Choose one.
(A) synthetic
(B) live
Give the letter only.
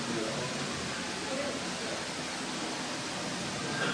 B